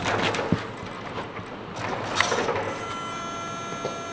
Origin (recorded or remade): recorded